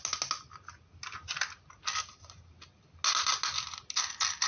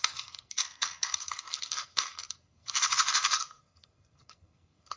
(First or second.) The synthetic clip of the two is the second